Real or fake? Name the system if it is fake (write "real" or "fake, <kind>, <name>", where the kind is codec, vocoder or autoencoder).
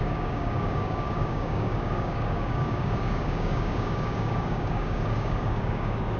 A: fake, codec, DAC